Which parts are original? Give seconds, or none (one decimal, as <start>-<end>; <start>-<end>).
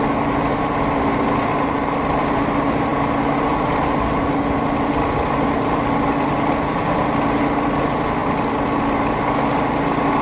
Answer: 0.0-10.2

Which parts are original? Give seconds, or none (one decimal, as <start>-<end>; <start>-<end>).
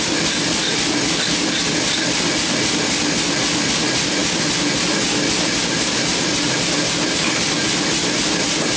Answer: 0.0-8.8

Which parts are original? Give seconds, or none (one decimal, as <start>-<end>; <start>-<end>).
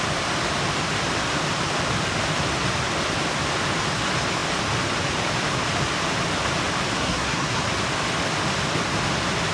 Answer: 0.0-6.9; 7.6-9.5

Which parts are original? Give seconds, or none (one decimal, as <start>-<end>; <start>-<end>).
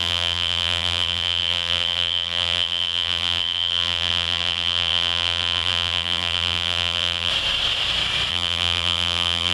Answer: 7.3-8.3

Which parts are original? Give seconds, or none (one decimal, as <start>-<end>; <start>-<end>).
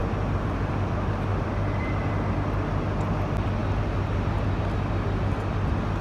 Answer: 0.7-1.3; 2.7-6.0